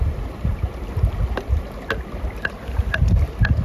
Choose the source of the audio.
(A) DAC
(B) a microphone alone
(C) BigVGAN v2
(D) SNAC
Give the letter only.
B